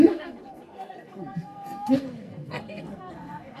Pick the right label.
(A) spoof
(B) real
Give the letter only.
A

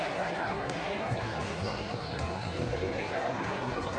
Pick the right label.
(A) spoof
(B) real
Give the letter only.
A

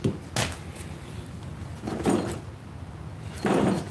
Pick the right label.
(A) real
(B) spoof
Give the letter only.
A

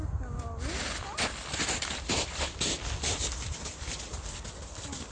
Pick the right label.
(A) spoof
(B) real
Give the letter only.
B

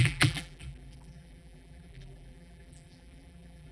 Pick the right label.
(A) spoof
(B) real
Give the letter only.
A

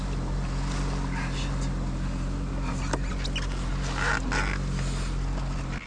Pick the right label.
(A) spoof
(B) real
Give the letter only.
B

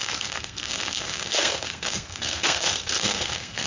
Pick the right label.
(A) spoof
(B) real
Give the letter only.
A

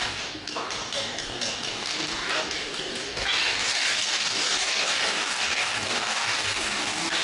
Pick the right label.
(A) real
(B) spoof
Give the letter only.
B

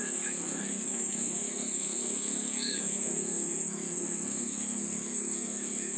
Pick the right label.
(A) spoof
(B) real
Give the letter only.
A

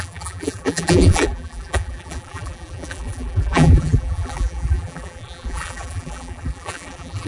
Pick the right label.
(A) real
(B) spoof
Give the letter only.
B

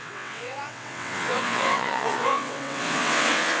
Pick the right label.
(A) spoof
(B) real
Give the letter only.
A